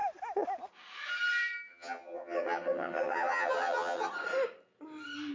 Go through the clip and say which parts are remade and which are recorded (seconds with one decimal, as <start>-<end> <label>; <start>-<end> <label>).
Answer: 0.0-1.7 recorded; 1.7-4.1 remade; 4.1-5.3 recorded